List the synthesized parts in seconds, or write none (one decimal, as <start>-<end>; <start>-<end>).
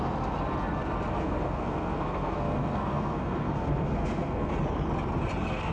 1.1-4.5